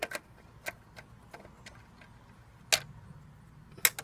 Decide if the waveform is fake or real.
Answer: real